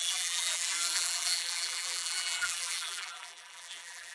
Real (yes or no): no